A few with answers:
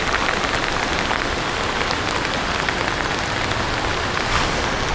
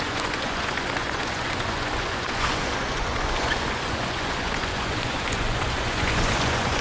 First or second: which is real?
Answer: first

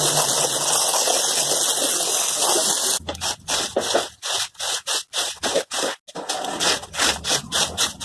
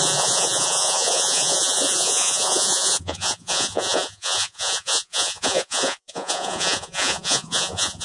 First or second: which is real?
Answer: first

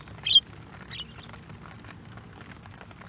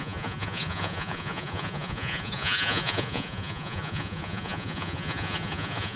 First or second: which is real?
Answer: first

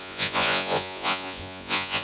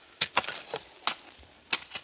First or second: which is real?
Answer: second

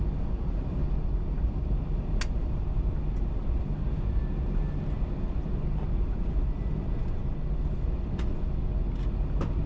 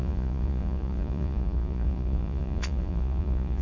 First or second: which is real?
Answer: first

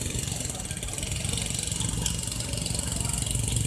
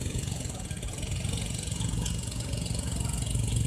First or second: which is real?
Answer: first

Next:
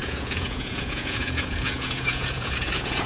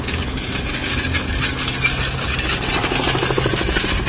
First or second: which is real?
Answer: second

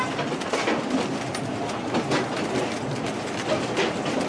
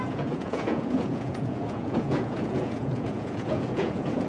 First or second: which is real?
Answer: first